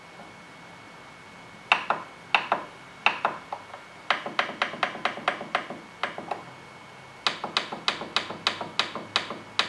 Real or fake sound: real